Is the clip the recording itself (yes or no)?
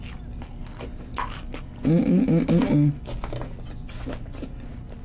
yes